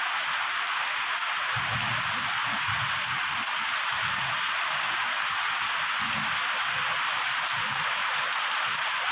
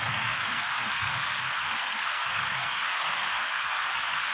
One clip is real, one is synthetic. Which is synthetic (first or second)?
second